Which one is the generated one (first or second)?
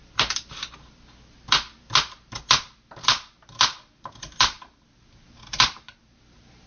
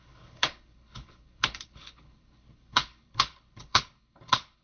second